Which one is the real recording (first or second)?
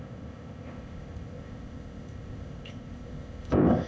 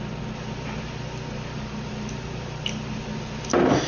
second